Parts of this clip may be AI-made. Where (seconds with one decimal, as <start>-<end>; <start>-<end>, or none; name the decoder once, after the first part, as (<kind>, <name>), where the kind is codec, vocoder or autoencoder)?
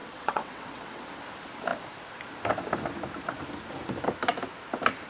0.0-1.0 (vocoder, WaveNeXt)